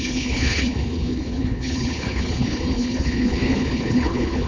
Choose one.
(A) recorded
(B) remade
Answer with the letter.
B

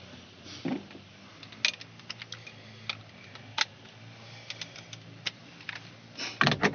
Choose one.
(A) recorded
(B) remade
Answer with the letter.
A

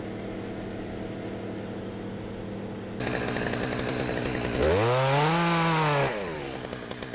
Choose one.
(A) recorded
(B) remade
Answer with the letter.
A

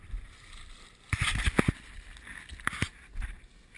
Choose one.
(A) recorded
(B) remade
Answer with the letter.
A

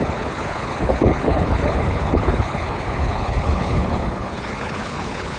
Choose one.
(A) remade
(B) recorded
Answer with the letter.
A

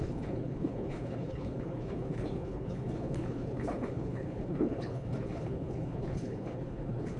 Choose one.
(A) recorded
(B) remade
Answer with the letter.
B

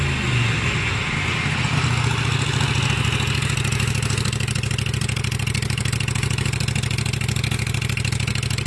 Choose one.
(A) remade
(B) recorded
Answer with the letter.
B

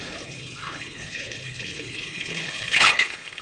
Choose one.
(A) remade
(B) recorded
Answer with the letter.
A